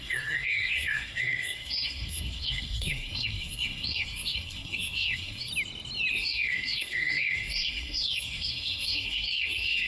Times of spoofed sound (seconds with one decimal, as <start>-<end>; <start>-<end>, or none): 0.0-5.5; 6.1-9.9